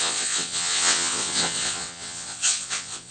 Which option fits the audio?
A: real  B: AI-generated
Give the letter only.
B